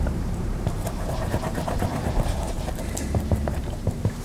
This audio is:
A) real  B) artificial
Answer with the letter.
B